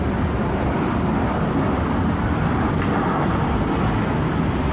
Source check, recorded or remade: recorded